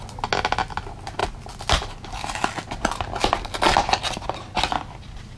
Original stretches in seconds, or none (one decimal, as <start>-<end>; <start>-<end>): 0.0-5.4